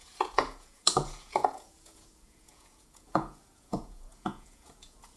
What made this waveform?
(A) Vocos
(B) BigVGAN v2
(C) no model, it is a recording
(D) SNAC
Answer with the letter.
A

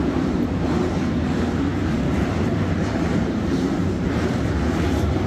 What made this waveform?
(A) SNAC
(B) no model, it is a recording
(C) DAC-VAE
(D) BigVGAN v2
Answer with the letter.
D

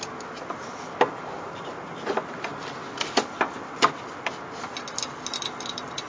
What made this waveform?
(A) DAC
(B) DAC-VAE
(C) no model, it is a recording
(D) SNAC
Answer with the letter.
C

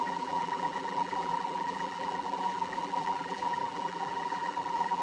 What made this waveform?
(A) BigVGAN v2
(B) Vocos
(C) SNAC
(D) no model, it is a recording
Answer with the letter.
A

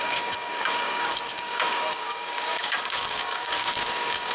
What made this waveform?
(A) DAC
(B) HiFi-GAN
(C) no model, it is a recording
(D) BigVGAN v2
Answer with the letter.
A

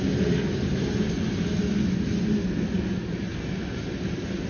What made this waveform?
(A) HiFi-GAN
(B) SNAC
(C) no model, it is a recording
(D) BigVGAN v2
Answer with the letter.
C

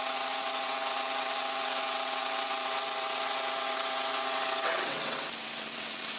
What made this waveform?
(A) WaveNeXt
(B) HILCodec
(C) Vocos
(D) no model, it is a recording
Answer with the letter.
A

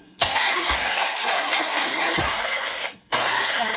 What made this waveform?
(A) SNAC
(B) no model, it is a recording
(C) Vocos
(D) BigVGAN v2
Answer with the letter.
A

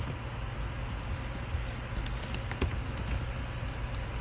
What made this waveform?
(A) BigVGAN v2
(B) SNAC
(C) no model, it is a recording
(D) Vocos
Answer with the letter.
C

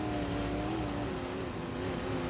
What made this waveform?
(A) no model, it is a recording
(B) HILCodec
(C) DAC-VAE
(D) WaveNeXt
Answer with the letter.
A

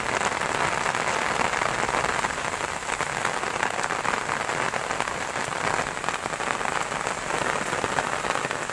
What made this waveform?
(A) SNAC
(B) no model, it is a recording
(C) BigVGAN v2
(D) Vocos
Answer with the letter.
B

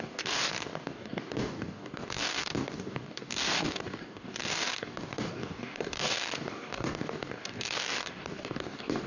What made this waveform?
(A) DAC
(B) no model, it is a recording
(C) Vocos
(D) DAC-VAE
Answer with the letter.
A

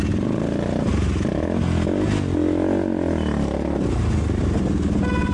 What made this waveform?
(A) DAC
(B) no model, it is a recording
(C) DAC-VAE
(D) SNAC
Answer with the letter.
B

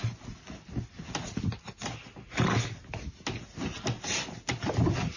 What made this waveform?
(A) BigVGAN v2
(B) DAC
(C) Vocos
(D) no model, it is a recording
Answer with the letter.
D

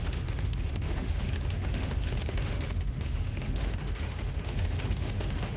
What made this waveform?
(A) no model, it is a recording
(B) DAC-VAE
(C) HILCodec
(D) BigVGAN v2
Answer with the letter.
B